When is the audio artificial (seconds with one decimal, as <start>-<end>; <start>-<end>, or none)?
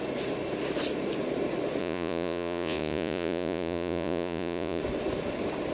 1.8-4.8